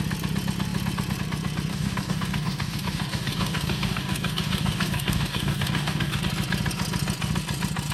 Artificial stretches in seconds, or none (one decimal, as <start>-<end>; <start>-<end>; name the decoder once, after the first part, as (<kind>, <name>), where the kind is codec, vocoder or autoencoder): 1.7-6.2 (codec, DAC)